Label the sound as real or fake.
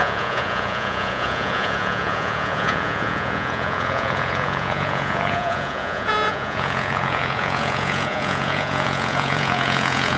fake